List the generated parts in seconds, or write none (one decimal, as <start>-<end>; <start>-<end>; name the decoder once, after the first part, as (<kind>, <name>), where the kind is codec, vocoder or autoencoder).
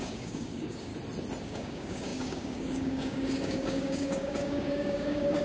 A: 0.0-0.9 (codec, DAC); 1.4-5.4